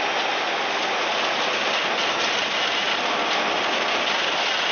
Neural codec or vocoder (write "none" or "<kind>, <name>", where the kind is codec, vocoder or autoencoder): none